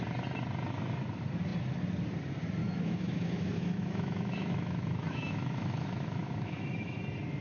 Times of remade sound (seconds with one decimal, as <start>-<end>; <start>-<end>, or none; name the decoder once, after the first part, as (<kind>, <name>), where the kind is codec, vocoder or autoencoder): 2.6-7.0 (autoencoder, DAC-VAE)